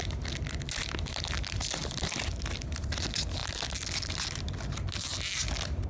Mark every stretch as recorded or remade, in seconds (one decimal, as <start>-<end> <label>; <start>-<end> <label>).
0.0-5.9 recorded